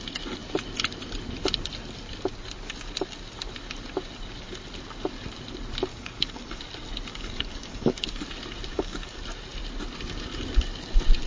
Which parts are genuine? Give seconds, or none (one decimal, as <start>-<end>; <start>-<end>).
0.0-5.9; 6.6-7.1; 8.2-8.7; 9.2-11.3